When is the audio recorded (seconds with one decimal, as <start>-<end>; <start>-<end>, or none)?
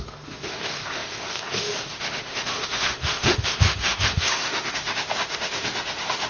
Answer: none